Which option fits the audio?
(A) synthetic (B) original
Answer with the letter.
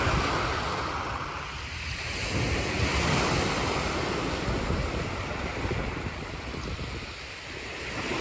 B